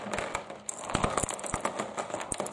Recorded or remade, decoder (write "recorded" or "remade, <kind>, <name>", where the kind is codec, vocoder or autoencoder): recorded